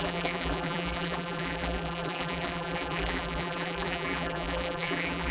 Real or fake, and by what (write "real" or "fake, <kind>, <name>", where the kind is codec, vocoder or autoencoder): fake, vocoder, BigVGAN v2